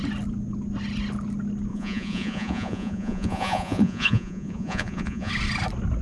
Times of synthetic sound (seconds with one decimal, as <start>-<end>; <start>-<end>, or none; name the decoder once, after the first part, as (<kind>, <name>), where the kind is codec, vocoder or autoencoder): 1.7-5.3 (vocoder, Vocos)